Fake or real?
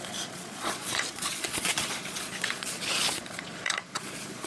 fake